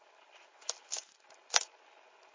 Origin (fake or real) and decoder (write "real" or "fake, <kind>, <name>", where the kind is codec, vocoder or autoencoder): real